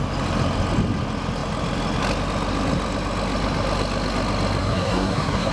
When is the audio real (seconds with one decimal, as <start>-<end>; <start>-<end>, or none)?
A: 0.0-4.6